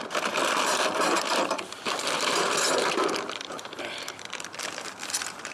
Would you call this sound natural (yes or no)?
no